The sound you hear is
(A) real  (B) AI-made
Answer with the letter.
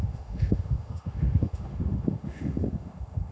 B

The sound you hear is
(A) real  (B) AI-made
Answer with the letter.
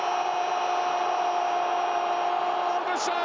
A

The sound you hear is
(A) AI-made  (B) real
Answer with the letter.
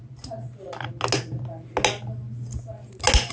B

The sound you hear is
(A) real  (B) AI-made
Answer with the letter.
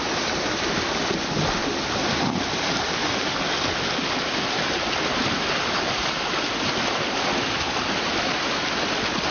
A